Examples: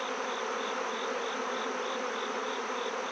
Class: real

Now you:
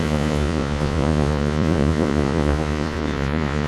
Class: fake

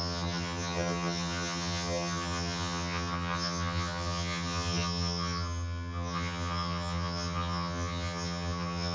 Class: fake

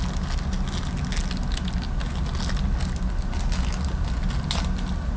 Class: real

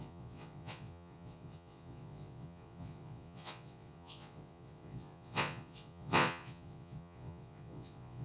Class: fake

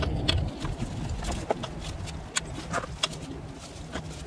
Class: real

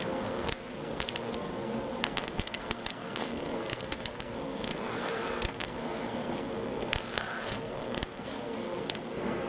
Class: fake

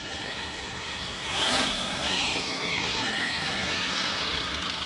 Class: fake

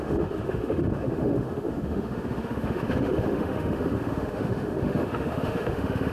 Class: fake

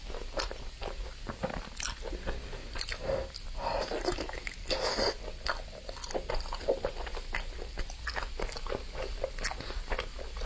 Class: real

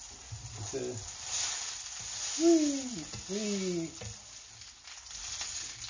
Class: real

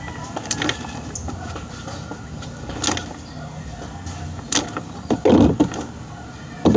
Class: real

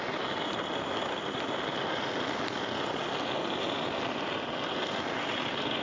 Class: real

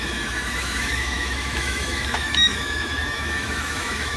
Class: fake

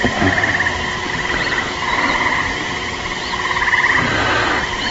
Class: real